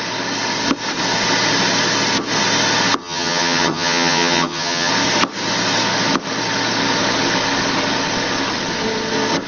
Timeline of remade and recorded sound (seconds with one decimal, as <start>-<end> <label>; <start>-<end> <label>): 0.0-3.0 recorded; 3.0-4.9 remade; 4.9-9.5 recorded